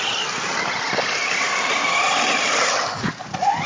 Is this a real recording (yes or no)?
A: yes